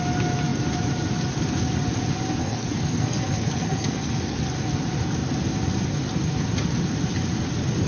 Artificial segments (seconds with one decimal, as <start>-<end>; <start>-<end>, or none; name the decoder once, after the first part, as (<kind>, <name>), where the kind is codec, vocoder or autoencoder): 2.4-4.4 (codec, SNAC)